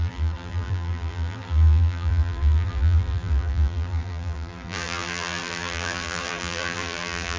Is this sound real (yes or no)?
no